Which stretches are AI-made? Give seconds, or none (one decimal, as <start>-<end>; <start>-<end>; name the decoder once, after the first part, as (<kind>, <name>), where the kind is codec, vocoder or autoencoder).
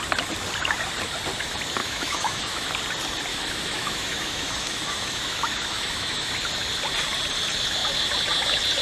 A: 1.8-2.7 (autoencoder, DAC-VAE); 3.3-6.3